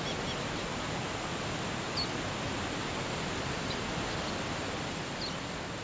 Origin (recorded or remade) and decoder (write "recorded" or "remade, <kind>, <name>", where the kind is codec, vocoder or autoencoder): recorded